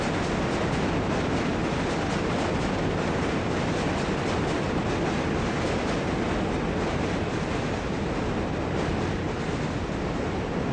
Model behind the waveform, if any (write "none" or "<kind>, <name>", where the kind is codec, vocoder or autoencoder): none